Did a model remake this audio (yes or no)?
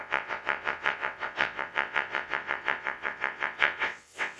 yes